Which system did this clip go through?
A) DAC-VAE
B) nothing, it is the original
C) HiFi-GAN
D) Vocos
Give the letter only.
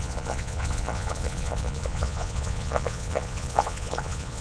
D